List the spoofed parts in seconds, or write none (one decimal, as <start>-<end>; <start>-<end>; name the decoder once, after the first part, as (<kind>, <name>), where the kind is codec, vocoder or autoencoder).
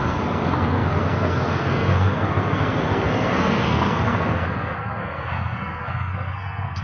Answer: 0.0-6.8 (codec, SNAC)